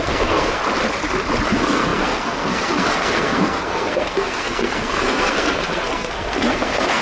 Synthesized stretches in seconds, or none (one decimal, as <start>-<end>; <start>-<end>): 0.0-0.6; 1.5-7.0